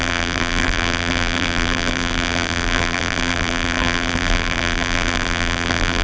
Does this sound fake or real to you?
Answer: fake